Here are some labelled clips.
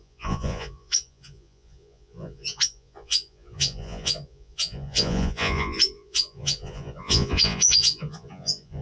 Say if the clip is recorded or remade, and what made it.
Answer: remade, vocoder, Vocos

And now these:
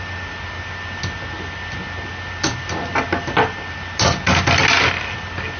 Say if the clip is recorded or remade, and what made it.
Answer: recorded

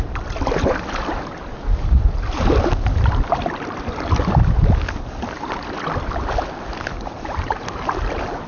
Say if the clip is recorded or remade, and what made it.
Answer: recorded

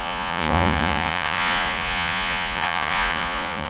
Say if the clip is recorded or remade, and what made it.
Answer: remade, vocoder, Vocos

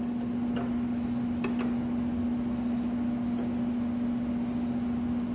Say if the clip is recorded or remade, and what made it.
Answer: recorded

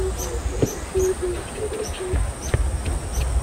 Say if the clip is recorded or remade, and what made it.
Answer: recorded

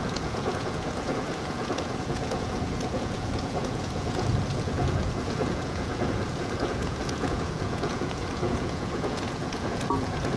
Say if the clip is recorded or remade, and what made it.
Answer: remade, vocoder, Vocos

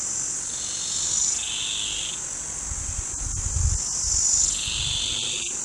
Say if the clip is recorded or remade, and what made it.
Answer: recorded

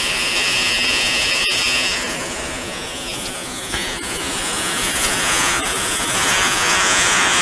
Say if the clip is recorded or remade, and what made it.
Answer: remade, vocoder, Vocos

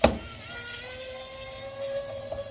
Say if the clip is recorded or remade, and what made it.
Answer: recorded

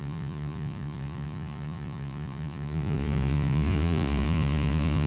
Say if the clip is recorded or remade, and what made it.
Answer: remade, vocoder, Vocos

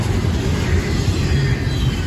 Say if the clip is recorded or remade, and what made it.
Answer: recorded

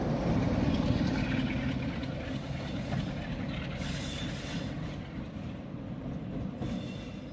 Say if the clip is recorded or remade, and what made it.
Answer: recorded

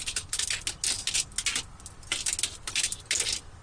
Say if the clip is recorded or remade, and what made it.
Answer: recorded